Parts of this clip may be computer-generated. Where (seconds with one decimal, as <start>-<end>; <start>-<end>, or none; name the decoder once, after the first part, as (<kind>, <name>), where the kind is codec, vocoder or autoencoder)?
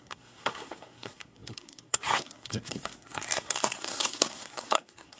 0.0-5.2 (codec, SNAC)